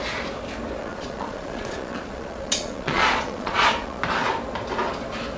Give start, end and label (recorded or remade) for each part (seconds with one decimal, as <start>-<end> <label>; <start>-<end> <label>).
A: 0.0-0.8 recorded; 0.8-4.0 remade; 4.0-5.4 recorded